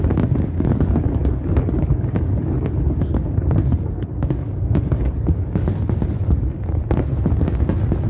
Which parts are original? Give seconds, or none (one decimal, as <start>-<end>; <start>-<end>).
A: 6.8-7.3